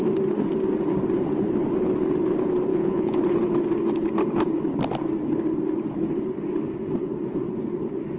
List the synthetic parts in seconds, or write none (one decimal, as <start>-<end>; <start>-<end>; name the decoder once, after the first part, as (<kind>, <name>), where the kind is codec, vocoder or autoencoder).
2.7-3.2 (vocoder, Vocos)